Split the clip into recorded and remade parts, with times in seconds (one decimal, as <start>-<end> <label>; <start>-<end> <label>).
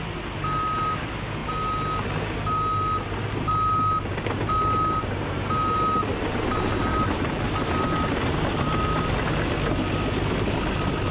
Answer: 0.0-6.9 recorded; 6.9-9.3 remade; 9.3-11.1 recorded